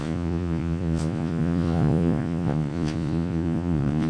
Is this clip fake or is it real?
fake